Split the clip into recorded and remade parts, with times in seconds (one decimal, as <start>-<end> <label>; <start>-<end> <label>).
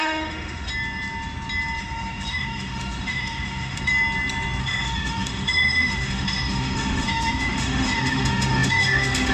0.0-0.7 remade; 0.7-1.8 recorded; 1.8-3.9 remade; 3.9-4.6 recorded; 4.6-9.3 remade